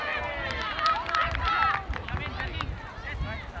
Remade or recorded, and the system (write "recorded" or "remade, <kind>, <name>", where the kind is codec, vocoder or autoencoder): recorded